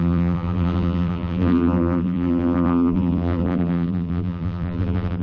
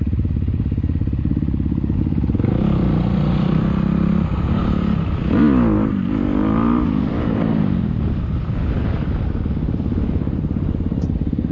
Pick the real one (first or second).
second